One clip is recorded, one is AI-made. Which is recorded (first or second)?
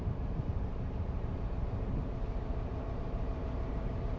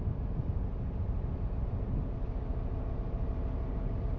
second